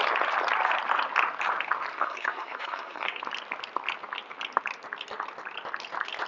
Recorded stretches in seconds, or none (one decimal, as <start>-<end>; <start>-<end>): 0.0-1.9; 3.2-6.3